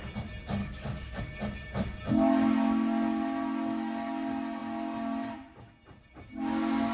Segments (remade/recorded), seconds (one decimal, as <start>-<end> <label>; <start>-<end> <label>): 0.0-0.6 recorded; 0.6-1.2 remade; 1.2-6.9 recorded